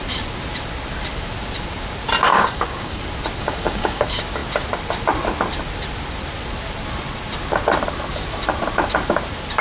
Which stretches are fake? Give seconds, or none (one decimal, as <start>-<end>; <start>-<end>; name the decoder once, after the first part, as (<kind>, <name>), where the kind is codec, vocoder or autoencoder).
2.3-3.0 (codec, DAC); 3.4-4.0